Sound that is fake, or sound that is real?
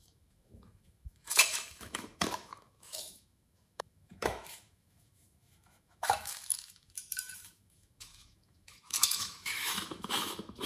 fake